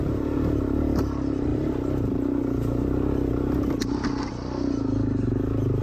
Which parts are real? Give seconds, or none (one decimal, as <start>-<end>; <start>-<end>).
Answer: 0.0-5.8